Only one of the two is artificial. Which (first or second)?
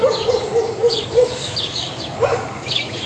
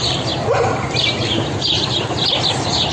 first